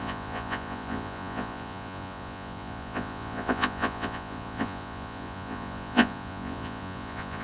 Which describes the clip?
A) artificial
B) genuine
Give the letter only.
A